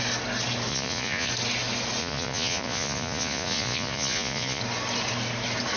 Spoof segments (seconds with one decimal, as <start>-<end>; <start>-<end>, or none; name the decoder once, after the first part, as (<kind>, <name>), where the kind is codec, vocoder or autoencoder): 0.7-1.3 (vocoder, Vocos); 2.0-4.6